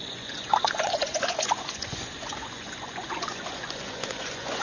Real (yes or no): no